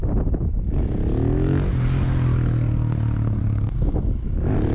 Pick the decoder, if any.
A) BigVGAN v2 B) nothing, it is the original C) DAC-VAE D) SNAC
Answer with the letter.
B